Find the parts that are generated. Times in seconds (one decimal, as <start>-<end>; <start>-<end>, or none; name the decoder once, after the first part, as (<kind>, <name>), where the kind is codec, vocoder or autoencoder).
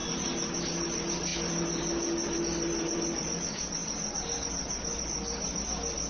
none